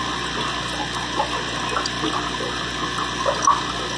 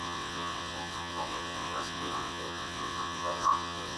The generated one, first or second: second